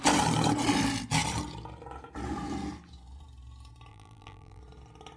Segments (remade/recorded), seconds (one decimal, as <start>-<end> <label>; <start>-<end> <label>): 0.0-3.9 recorded; 3.9-4.6 remade; 4.6-5.2 recorded